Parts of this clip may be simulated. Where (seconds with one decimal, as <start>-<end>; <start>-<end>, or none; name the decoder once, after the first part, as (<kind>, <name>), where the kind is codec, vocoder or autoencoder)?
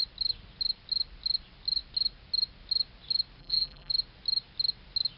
3.4-3.9 (vocoder, BigVGAN v2)